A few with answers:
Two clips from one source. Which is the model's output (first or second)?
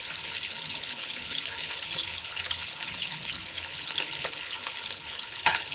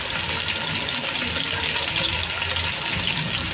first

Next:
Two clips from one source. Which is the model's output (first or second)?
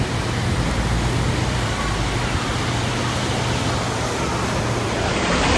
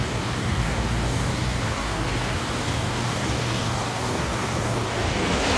second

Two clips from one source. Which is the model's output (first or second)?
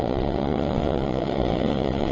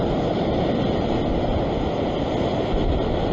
first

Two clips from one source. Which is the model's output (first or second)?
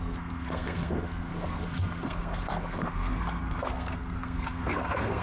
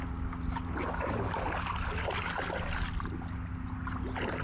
first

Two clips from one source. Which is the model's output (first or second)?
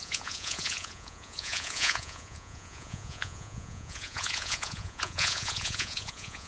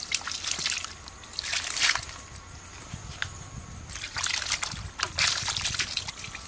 first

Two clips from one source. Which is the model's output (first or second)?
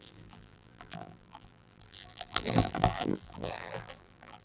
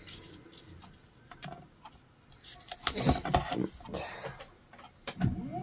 first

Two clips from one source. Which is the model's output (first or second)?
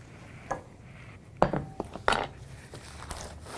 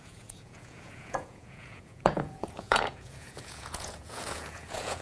second